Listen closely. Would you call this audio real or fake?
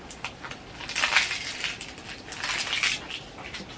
real